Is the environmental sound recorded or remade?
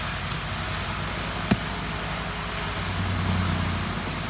recorded